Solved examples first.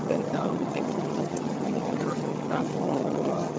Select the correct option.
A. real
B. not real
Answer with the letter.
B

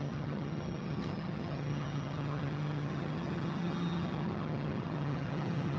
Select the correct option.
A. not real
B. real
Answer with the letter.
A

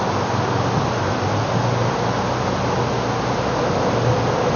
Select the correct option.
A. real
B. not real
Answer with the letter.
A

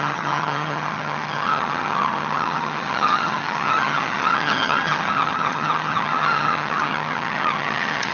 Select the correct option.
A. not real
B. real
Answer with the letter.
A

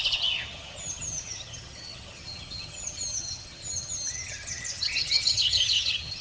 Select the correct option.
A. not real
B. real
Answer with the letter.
A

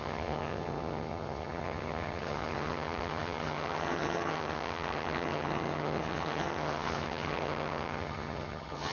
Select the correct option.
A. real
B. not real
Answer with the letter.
B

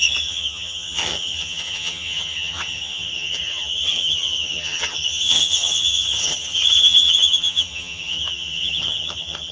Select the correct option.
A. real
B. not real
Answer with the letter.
B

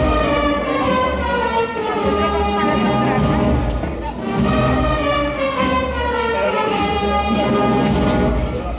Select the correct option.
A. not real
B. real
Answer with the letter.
B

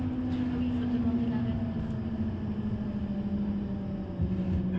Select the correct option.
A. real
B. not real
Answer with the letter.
A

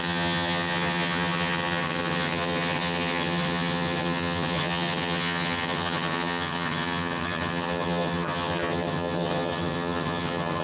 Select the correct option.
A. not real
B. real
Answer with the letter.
A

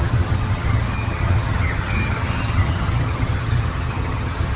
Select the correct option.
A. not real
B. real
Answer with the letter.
A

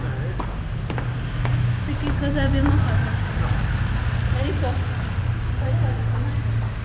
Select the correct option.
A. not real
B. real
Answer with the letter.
B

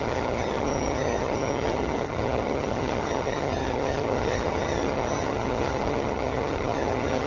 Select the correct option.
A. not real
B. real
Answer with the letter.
A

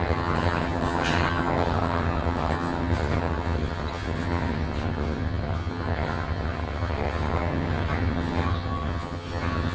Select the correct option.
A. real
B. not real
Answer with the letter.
B